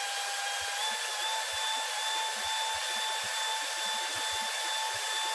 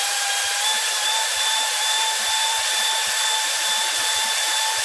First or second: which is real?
first